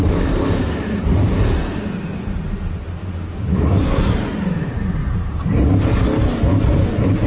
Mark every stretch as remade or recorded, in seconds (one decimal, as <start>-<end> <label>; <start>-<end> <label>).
0.0-0.6 recorded; 0.6-2.0 remade; 2.0-3.0 recorded; 3.0-4.3 remade; 4.3-5.0 recorded; 5.0-5.9 remade; 5.9-7.3 recorded